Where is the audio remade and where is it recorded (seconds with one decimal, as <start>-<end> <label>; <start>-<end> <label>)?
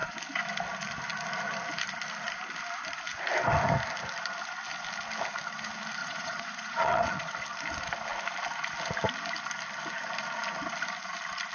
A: 0.0-6.0 recorded; 6.0-7.3 remade; 7.3-11.5 recorded